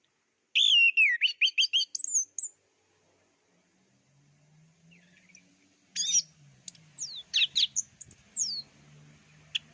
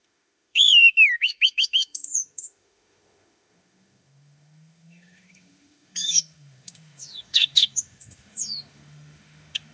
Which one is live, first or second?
first